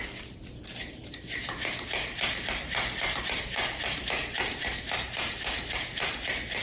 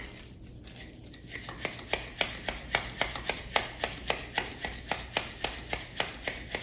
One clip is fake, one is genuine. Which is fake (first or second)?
first